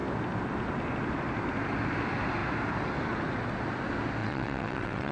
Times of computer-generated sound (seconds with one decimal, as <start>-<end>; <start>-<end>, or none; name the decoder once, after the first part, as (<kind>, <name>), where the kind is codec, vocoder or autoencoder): 4.2-5.1 (vocoder, WaveNeXt)

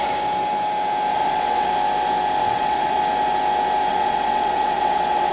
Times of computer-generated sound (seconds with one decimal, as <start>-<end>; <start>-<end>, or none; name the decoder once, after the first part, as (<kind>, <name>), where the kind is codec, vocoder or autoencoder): 1.1-1.7 (vocoder, WaveNeXt); 2.4-3.0; 3.9-5.3